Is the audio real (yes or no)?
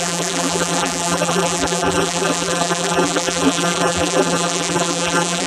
no